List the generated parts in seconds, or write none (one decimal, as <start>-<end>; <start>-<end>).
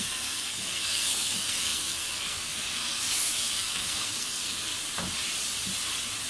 0.0-4.7